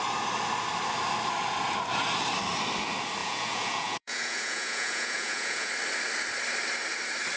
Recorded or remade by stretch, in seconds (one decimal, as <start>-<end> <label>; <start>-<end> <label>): 0.0-3.2 recorded; 3.2-5.7 remade; 5.7-7.4 recorded